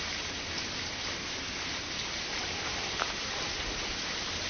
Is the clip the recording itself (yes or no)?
yes